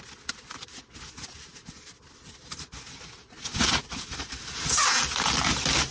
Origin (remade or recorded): recorded